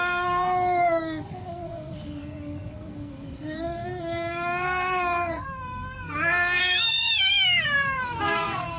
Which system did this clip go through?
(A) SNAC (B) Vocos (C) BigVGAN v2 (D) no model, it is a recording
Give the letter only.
A